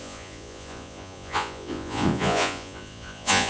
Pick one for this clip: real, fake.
fake